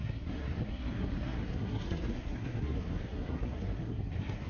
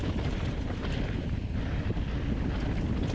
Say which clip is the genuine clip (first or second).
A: second